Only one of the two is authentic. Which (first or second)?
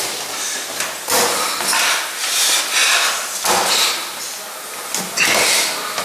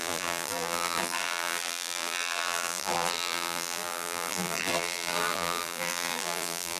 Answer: first